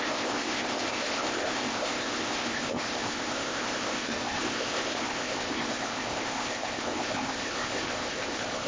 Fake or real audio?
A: fake